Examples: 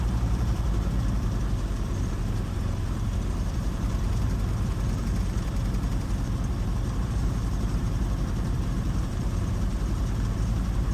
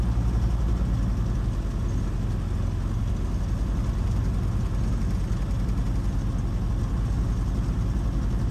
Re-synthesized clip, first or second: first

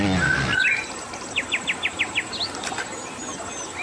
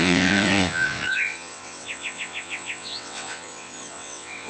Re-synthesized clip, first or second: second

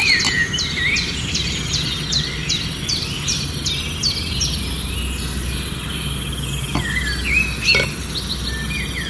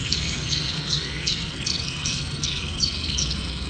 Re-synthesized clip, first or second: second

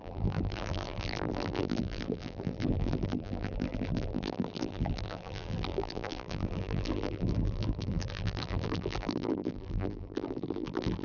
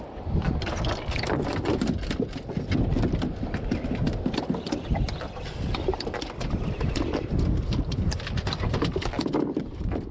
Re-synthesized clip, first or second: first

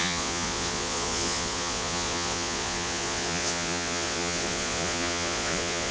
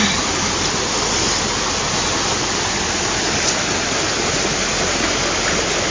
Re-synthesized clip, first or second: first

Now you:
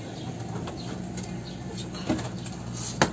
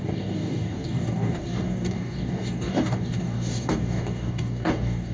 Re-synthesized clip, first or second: second